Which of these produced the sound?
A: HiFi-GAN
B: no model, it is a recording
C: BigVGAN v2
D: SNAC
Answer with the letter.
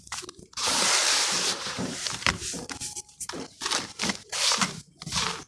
C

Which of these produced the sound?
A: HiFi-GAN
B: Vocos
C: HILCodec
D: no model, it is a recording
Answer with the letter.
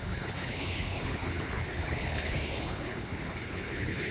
C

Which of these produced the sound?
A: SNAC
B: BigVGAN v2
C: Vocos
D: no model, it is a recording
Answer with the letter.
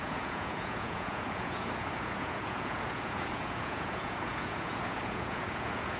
C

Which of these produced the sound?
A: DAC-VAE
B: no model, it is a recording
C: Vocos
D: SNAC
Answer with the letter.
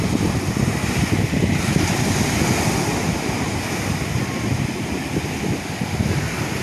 B